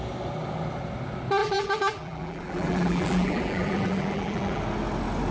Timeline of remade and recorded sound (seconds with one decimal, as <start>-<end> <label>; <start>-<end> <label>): 0.0-1.4 recorded; 1.4-4.6 remade; 4.6-5.3 recorded